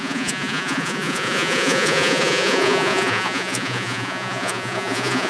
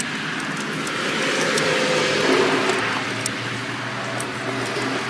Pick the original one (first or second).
second